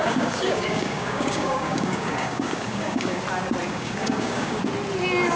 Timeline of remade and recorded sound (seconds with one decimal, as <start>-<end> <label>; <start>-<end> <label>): 0.0-3.2 remade; 3.2-3.7 recorded; 3.7-4.6 remade; 4.6-5.4 recorded